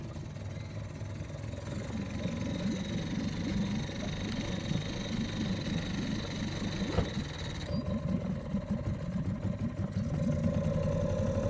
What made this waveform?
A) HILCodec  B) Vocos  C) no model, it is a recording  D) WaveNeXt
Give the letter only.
C